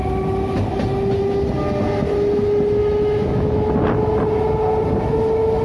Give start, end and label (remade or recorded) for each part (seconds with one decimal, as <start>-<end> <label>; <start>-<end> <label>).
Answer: 0.0-2.8 recorded; 2.8-3.7 remade; 3.7-5.6 recorded